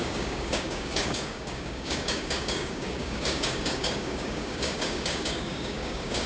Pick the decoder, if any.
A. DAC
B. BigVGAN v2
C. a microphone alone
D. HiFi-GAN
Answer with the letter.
A